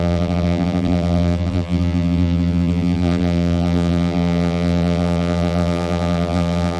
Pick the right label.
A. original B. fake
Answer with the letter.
B